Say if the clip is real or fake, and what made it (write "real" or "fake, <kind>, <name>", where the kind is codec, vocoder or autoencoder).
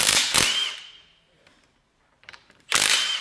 fake, vocoder, BigVGAN v2